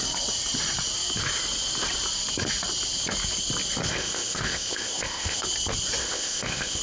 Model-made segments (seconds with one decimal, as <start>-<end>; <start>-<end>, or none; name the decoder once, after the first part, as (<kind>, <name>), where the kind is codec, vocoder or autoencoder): 3.9-5.4 (codec, ZipCodec); 6.0-6.8